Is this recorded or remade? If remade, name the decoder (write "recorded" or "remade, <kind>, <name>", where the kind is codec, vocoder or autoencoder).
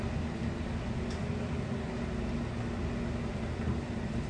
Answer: recorded